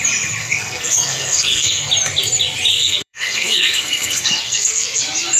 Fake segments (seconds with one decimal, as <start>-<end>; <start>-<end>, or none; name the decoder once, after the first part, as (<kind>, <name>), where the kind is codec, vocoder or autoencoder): 0.4-1.9 (codec, SNAC); 2.7-5.0